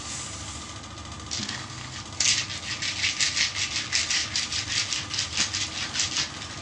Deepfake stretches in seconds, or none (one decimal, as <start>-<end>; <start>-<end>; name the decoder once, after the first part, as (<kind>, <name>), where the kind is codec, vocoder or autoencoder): 1.4-2.0 (codec, SNAC)